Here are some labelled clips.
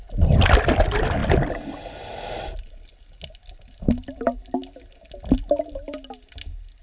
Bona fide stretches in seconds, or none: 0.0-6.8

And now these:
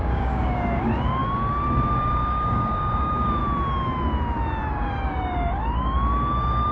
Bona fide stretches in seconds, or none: 3.4-4.7

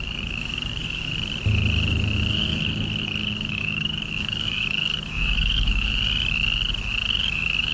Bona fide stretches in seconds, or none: 1.1-2.4; 5.9-7.1

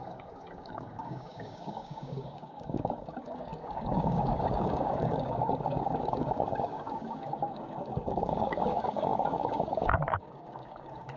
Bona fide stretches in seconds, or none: none